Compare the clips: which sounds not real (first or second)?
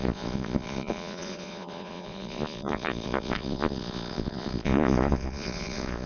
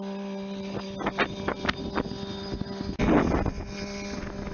first